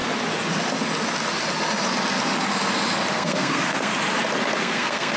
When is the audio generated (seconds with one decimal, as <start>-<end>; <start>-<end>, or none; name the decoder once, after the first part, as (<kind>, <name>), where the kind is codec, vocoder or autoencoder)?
3.1-3.9 (codec, SNAC); 4.6-5.2

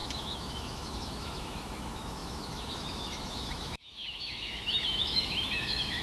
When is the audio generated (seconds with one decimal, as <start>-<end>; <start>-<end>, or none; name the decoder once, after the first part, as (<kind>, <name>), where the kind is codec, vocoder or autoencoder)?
0.0-6.0 (autoencoder, DAC-VAE)

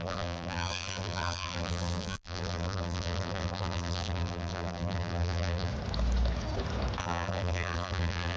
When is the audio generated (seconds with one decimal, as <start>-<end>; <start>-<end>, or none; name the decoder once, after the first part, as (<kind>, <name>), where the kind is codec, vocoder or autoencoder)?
0.0-5.7 (vocoder, BigVGAN v2); 7.0-8.4

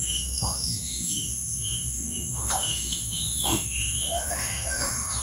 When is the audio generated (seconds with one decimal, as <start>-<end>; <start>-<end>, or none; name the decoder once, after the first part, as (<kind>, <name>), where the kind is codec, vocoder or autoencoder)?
0.0-5.2 (autoencoder, DAC-VAE)

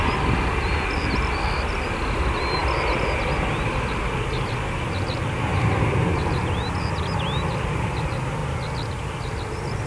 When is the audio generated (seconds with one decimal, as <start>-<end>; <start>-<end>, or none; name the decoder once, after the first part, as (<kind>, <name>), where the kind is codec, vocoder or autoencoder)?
none

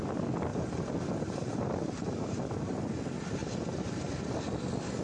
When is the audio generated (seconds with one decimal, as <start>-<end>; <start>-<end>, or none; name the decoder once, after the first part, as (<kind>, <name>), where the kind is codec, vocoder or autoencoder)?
0.5-2.8 (vocoder, BigVGAN v2); 3.4-4.1

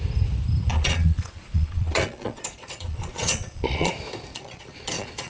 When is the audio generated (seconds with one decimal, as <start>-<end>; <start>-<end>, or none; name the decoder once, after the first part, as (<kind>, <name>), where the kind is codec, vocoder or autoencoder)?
0.7-3.9 (vocoder, Vocos); 4.3-5.3